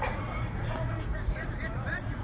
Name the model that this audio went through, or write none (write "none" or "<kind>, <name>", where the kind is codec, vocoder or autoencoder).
vocoder, Vocos